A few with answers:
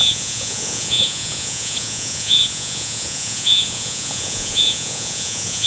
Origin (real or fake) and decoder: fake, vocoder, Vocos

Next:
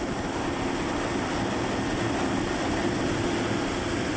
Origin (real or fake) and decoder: real